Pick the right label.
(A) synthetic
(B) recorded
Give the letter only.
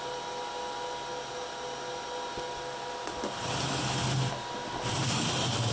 B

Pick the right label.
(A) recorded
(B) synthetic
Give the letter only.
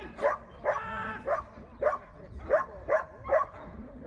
A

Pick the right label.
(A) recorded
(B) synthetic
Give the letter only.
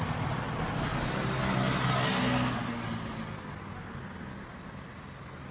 A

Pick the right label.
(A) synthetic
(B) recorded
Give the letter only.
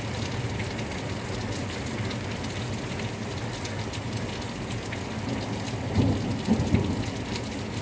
B